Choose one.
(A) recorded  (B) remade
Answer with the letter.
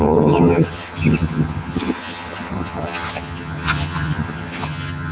B